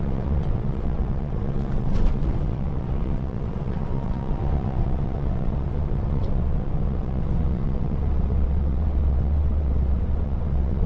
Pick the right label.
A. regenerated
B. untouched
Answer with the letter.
A